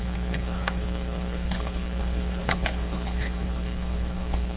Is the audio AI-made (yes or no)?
yes